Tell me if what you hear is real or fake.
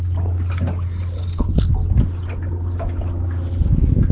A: real